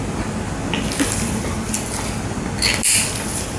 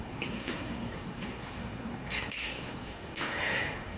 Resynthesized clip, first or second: second